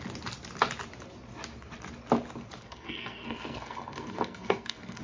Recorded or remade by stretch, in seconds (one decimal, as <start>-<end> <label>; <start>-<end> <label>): 0.0-2.6 recorded; 2.6-5.0 remade